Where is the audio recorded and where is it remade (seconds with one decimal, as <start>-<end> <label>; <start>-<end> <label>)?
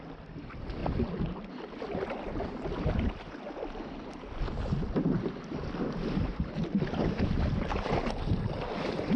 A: 0.0-9.2 recorded